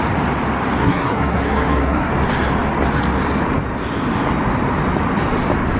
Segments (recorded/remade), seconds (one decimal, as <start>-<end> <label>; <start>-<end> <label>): 0.0-0.8 recorded; 0.8-2.1 remade; 2.1-5.8 recorded